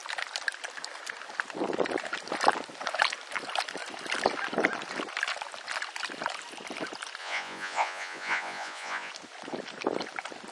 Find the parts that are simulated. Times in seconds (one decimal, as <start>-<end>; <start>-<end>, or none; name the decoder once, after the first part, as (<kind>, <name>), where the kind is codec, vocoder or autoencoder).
7.2-9.1 (vocoder, Vocos)